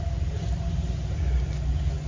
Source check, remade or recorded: recorded